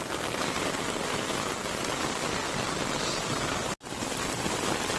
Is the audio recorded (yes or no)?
yes